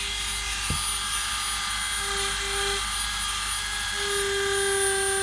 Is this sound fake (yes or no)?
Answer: no